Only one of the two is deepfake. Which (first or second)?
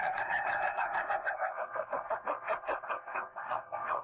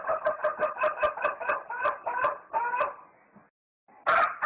first